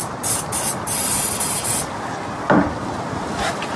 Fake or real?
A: real